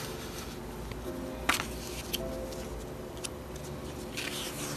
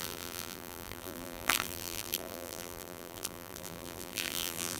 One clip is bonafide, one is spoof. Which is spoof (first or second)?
second